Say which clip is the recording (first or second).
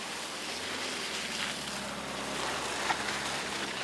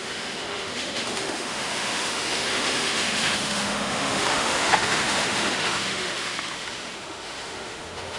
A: first